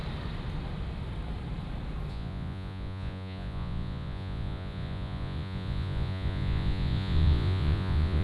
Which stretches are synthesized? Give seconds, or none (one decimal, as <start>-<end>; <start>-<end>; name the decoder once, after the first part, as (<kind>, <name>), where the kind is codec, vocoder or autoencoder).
2.1-8.2 (vocoder, Vocos)